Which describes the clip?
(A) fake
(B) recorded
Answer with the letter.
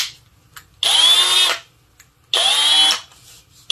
B